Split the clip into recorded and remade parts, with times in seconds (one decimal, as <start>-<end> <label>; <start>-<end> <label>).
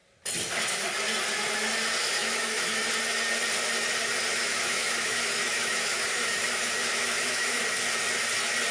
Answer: 0.0-2.0 recorded; 2.0-2.8 remade; 2.8-4.3 recorded; 4.3-7.6 remade; 7.6-8.7 recorded